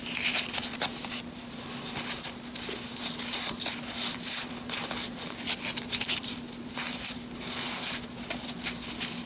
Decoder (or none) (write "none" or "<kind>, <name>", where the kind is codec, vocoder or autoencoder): none